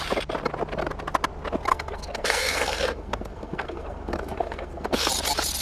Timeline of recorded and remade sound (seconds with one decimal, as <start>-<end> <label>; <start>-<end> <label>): 0.0-1.7 recorded; 1.7-5.1 remade; 5.1-5.6 recorded